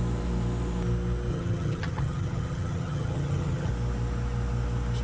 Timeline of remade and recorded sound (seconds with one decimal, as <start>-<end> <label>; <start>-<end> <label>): 0.0-1.3 recorded; 1.3-3.7 remade; 3.7-5.0 recorded

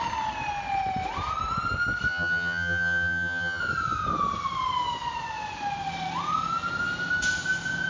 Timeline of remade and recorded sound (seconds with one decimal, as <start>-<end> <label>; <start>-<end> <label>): 0.0-2.1 recorded; 2.1-3.6 remade; 3.6-7.9 recorded

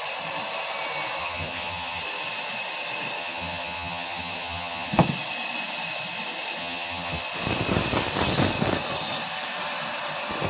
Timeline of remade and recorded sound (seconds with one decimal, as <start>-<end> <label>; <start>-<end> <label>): 0.0-1.2 recorded; 1.2-2.0 remade; 2.0-3.2 recorded; 3.2-4.9 remade; 4.9-6.6 recorded; 6.6-7.2 remade; 7.2-10.5 recorded

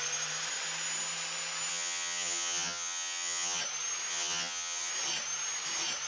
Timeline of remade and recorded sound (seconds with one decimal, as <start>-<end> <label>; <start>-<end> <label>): 0.0-1.7 recorded; 1.7-3.6 remade; 3.6-4.1 recorded; 4.1-4.9 remade; 4.9-6.1 recorded

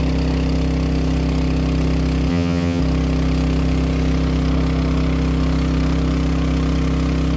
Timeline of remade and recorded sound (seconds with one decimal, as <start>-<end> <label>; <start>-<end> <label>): 0.0-2.3 recorded; 2.3-2.8 remade; 2.8-7.4 recorded